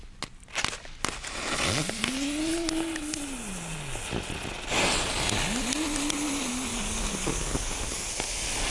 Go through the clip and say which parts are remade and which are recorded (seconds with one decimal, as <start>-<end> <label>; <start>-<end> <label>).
0.0-6.7 recorded; 6.7-8.1 remade; 8.1-8.7 recorded